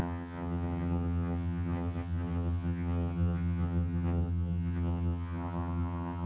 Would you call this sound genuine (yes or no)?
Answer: no